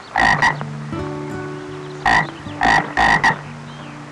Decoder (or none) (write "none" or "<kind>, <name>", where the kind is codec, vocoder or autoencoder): none